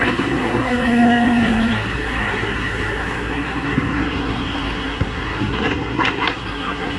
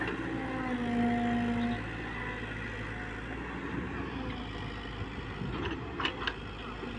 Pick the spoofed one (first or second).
first